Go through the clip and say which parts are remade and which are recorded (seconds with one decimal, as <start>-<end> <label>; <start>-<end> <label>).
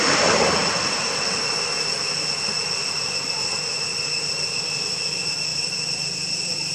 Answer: 0.0-0.6 recorded; 0.6-4.4 remade; 4.4-5.5 recorded; 5.5-6.7 remade